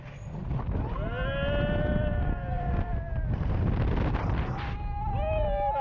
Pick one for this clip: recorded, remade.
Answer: recorded